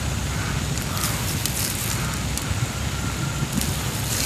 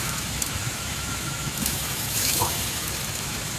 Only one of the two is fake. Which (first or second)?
second